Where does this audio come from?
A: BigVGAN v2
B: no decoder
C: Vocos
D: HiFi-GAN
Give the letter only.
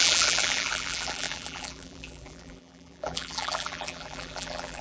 A